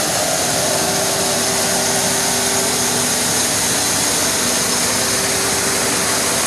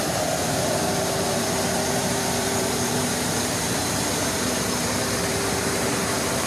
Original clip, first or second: first